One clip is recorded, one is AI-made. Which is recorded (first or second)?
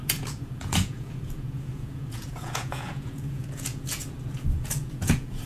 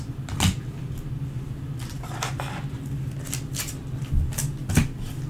second